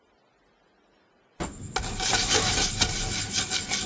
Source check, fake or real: real